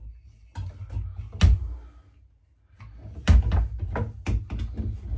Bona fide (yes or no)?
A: yes